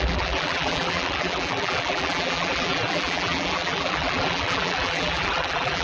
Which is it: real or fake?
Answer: fake